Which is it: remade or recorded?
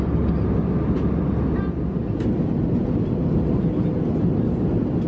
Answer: recorded